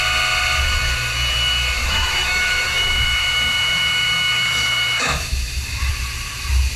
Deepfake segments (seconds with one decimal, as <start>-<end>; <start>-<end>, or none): 1.8-5.9